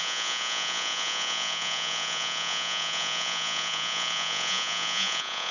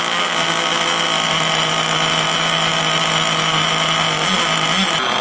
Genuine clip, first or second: second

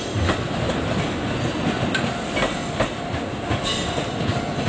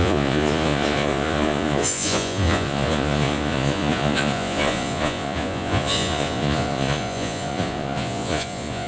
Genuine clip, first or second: first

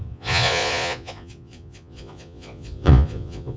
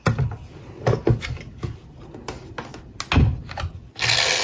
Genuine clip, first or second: second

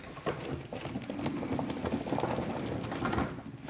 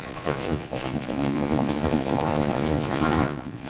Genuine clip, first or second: first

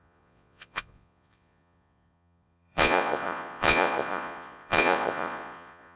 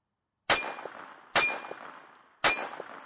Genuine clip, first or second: second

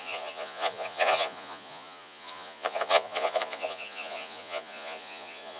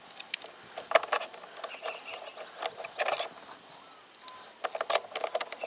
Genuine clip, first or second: second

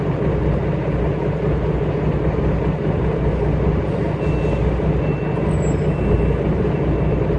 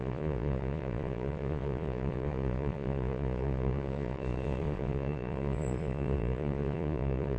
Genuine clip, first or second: first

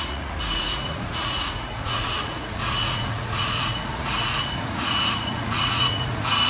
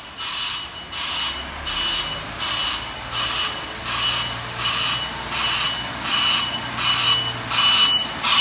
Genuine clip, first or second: second